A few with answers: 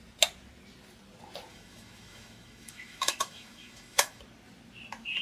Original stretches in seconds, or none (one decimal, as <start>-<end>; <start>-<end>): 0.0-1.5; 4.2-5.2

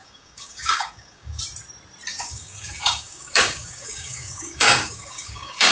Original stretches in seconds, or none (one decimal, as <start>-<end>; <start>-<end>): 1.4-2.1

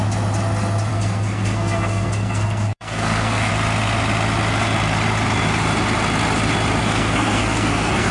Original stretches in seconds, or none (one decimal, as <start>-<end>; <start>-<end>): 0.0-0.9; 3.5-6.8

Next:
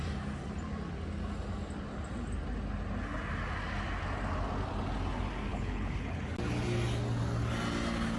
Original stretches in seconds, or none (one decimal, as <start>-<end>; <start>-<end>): 0.0-5.5; 6.3-8.2

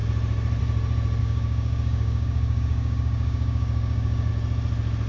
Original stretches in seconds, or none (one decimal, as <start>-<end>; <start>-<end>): 0.0-1.2; 4.3-5.1

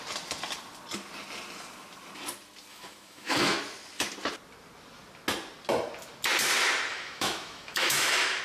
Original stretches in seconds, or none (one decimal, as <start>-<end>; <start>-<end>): 0.0-2.7; 3.6-6.9

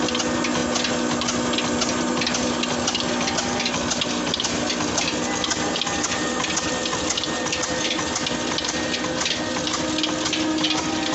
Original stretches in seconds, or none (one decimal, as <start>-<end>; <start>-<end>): 0.0-11.1